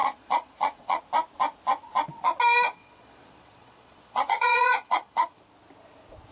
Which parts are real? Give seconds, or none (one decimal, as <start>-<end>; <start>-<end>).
1.0-2.8; 5.4-6.3